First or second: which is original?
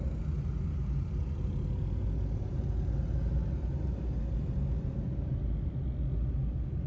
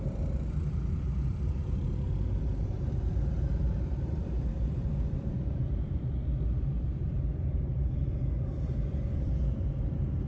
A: first